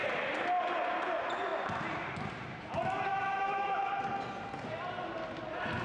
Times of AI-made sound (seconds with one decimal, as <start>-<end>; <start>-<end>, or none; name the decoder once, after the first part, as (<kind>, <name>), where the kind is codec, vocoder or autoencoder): 3.1-4.0 (autoencoder, DAC-VAE)